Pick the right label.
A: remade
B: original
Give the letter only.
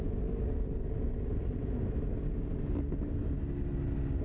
B